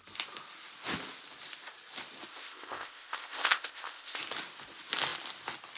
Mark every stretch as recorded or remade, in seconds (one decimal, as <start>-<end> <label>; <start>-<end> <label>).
0.0-2.3 recorded; 2.3-4.2 remade; 4.2-5.8 recorded